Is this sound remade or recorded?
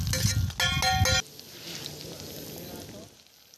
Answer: recorded